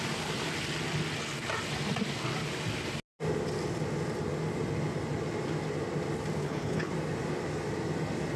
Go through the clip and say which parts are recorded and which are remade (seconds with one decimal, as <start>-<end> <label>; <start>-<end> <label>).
0.0-6.4 recorded; 6.4-6.9 remade; 6.9-8.4 recorded

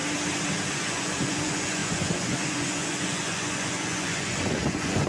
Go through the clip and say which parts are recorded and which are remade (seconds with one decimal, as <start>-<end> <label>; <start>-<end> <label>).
0.0-0.7 recorded; 0.7-5.1 remade

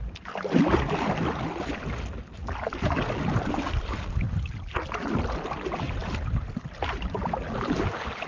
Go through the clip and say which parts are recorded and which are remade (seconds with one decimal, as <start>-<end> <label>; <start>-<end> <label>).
0.0-8.3 recorded

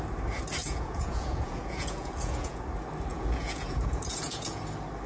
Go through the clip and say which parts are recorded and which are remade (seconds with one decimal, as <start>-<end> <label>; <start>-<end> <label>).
0.0-0.6 recorded; 0.6-2.6 remade; 2.6-3.1 recorded; 3.1-4.6 remade; 4.6-5.1 recorded